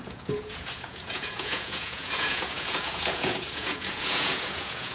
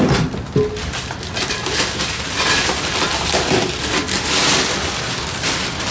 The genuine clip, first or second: second